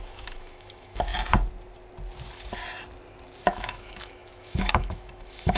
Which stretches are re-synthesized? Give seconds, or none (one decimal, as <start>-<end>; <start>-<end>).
0.0-1.1; 3.4-5.6